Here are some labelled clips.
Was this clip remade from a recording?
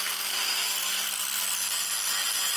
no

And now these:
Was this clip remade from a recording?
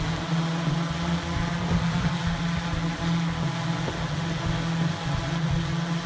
no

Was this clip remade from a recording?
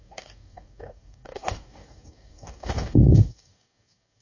yes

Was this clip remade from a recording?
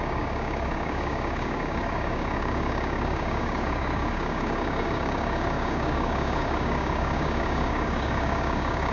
yes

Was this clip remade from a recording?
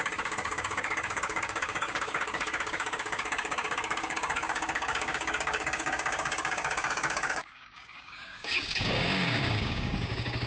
yes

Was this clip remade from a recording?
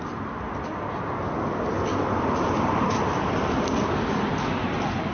no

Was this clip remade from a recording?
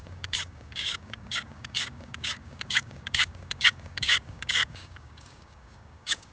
yes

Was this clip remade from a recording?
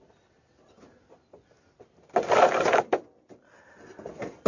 no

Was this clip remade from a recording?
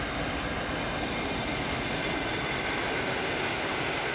no